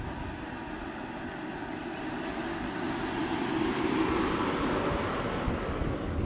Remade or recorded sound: recorded